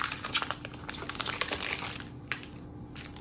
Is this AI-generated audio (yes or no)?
no